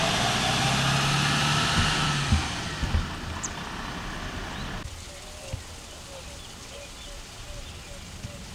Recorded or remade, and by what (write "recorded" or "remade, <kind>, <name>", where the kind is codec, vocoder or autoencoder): recorded